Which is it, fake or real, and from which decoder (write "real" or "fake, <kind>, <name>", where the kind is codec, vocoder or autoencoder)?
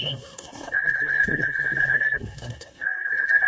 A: fake, codec, SNAC